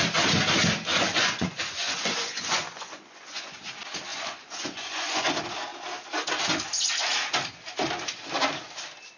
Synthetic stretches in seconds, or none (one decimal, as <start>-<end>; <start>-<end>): 0.9-3.6; 4.1-5.3